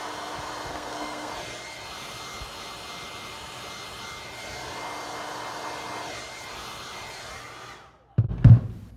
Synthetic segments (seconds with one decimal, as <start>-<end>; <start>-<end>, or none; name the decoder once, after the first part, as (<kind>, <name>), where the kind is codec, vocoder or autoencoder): 0.7-1.3 (codec, SNAC)